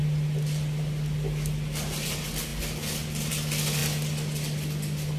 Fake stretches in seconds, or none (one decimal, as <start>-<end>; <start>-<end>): none